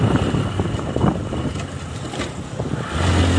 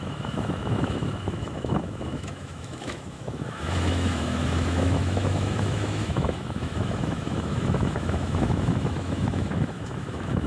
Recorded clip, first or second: first